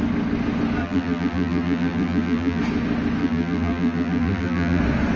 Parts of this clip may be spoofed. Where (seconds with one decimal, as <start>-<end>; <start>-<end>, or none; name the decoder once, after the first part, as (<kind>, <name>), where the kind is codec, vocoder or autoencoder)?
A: 0.8-2.6 (vocoder, BigVGAN v2); 3.2-4.8